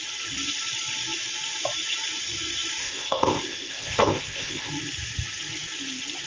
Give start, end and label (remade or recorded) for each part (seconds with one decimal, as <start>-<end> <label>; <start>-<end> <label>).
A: 0.0-2.8 recorded; 2.8-4.7 remade; 4.7-6.3 recorded